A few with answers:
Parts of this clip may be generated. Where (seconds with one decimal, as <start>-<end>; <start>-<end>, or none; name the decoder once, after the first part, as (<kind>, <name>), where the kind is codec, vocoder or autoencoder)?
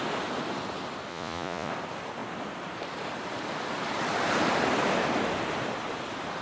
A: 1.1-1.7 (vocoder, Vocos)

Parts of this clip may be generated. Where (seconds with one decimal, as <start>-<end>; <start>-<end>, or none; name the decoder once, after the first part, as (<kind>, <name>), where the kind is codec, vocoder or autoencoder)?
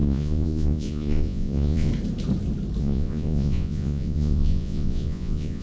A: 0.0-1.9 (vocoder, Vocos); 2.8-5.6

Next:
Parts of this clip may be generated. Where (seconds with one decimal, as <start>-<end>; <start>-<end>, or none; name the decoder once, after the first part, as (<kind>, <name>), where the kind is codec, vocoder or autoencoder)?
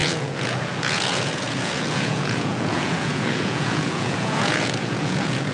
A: 0.0-5.5 (vocoder, Vocos)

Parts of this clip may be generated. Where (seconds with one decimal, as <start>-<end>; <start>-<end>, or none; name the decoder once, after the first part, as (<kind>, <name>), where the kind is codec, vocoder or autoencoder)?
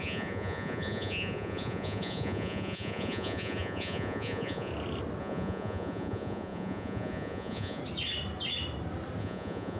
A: 0.0-4.7 (vocoder, Vocos); 5.2-7.8; 9.2-9.8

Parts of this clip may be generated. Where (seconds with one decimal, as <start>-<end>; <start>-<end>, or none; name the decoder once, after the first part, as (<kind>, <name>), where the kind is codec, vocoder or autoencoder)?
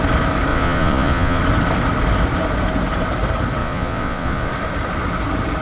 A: 0.5-1.4 (vocoder, Vocos); 3.6-4.5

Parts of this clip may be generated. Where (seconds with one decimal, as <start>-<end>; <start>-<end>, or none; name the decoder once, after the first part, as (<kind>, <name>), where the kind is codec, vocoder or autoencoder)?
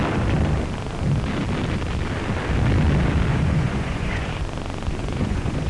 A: 3.3-4.3 (vocoder, Vocos); 5.0-5.7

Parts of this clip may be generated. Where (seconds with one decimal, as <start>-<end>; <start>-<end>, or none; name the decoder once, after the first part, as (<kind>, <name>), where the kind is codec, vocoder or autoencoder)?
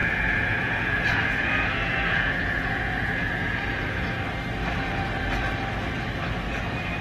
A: 0.0-4.2 (vocoder, Vocos)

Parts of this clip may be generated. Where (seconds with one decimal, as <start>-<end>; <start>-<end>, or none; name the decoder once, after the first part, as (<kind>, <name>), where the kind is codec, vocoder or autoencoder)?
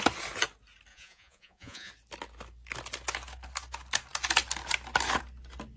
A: 0.9-1.9 (vocoder, Vocos)